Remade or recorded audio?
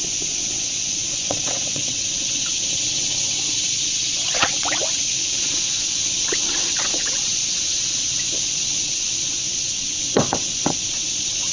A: remade